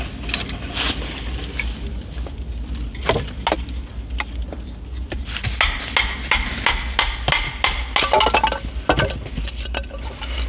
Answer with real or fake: real